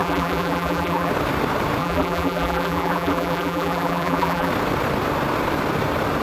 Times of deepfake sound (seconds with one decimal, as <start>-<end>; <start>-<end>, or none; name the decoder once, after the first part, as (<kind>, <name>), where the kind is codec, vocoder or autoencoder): 0.0-1.1 (vocoder, BigVGAN v2); 1.8-4.5